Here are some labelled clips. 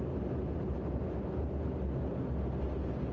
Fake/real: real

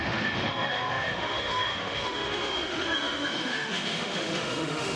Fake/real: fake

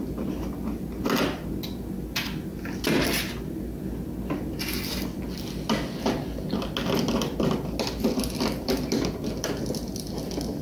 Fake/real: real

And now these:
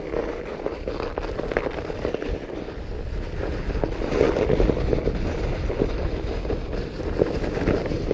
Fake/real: real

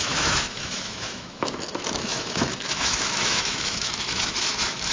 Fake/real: fake